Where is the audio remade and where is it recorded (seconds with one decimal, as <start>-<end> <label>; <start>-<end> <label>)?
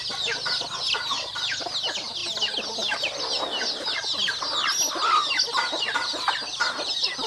0.0-7.3 recorded